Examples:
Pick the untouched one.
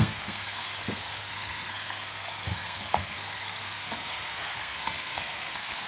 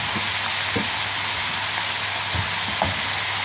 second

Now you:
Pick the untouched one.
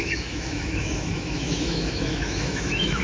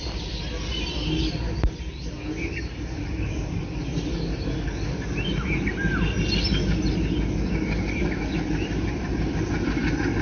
second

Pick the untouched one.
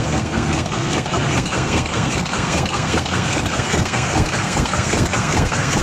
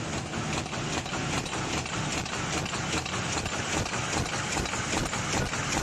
second